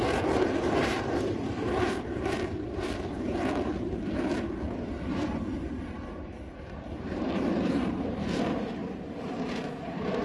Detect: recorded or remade remade